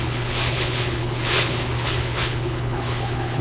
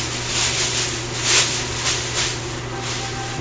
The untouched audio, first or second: second